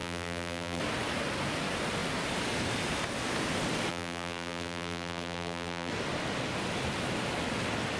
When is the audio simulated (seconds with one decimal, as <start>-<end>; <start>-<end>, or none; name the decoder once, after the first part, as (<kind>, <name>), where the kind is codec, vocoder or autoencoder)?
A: 0.0-0.8 (vocoder, BigVGAN v2); 3.9-5.9

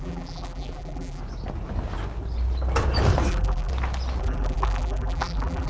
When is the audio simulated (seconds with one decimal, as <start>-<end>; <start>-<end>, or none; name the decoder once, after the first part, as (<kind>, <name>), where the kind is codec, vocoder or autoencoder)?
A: 0.0-1.2 (vocoder, BigVGAN v2); 3.3-3.7; 4.2-5.7

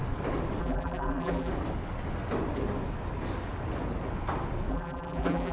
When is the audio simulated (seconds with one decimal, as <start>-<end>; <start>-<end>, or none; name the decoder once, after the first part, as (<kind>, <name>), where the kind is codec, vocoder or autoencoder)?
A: 0.6-1.5 (vocoder, BigVGAN v2); 4.7-5.5

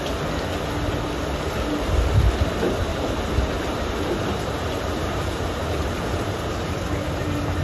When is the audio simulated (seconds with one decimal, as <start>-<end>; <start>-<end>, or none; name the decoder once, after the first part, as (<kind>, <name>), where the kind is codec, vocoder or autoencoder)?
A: 2.9-7.6 (vocoder, BigVGAN v2)

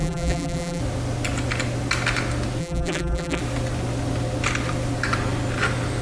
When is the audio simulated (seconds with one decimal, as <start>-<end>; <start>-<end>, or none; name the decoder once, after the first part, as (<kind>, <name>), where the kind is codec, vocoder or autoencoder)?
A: 0.0-0.8 (vocoder, BigVGAN v2); 2.6-3.4

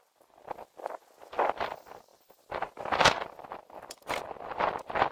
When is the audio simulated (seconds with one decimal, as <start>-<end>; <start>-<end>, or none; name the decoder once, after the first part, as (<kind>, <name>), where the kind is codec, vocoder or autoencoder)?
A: 0.0-5.1 (vocoder, BigVGAN v2)